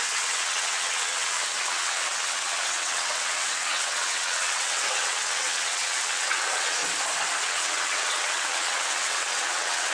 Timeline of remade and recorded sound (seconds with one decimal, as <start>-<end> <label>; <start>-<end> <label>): 0.0-6.8 remade; 6.8-7.4 recorded; 7.4-9.9 remade